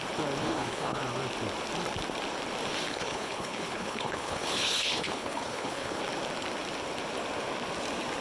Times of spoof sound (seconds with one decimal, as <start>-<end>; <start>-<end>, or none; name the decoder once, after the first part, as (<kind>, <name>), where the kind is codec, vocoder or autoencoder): 0.4-1.0 (codec, HILCodec); 2.9-6.0